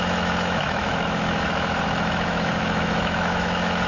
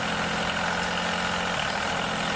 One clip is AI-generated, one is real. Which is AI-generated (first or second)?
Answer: first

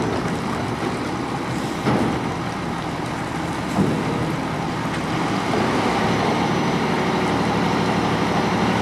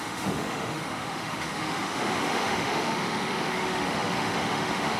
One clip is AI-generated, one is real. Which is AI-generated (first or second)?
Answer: second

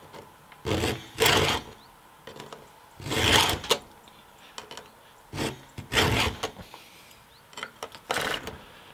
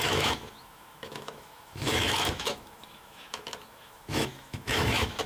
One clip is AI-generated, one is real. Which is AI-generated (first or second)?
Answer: second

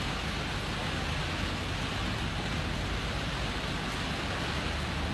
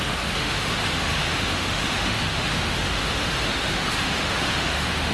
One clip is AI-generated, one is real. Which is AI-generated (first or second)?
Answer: second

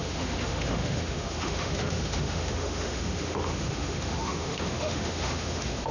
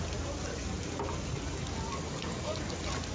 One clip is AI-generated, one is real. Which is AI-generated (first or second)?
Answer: first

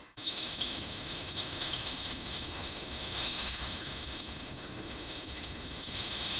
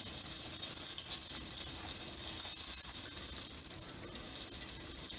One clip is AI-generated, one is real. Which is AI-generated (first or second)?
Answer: first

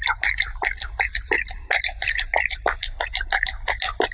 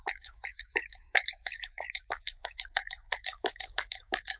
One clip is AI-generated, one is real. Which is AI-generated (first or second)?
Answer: second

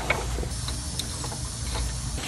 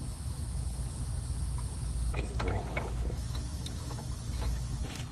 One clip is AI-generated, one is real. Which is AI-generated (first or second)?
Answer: second